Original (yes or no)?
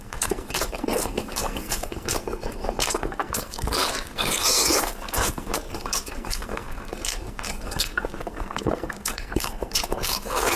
no